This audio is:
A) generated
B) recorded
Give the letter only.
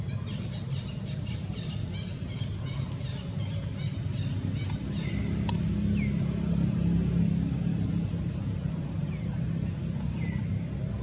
B